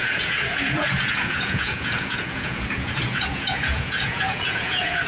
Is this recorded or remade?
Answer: remade